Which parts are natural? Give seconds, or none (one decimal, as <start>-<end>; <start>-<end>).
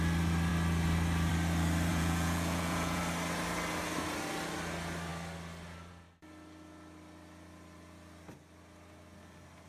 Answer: 0.0-1.9; 3.0-9.7